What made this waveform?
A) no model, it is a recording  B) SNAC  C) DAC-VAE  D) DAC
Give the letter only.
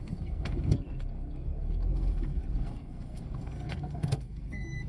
B